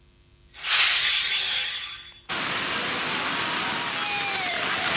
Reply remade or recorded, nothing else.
recorded